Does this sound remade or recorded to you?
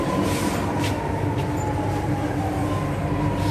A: recorded